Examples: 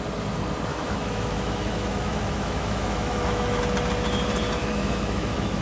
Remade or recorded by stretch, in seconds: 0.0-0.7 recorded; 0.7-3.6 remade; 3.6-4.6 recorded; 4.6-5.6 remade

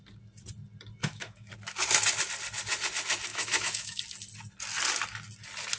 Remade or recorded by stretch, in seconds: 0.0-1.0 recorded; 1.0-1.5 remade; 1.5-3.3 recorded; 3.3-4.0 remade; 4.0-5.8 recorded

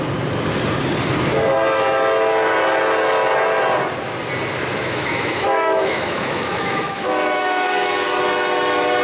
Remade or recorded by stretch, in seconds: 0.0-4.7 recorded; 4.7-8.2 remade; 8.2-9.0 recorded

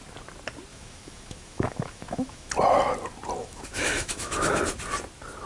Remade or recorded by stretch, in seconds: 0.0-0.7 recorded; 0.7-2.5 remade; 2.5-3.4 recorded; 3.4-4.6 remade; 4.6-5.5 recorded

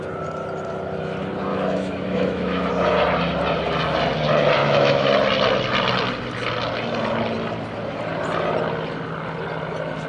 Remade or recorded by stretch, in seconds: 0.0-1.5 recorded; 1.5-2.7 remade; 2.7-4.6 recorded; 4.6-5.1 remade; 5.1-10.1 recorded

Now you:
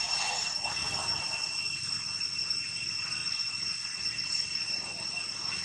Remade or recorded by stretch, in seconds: 0.0-5.6 recorded